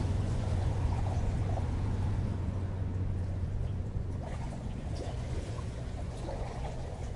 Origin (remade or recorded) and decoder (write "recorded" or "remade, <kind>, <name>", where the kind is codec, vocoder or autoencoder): remade, vocoder, Vocos